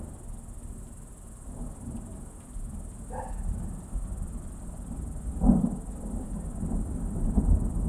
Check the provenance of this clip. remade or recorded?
recorded